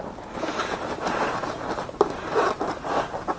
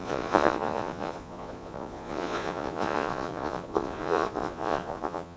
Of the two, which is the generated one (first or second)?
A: second